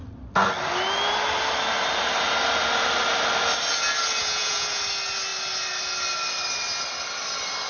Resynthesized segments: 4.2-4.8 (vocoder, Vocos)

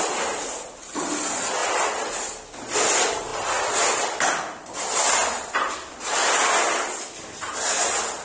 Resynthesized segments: none